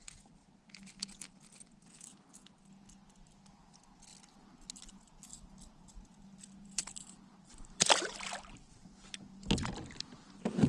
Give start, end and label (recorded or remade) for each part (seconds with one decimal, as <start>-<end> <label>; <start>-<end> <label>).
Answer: 0.0-5.3 recorded; 5.3-8.3 remade; 8.3-10.7 recorded